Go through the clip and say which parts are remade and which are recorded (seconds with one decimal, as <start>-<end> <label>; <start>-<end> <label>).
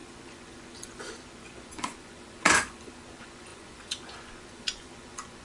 0.0-5.4 remade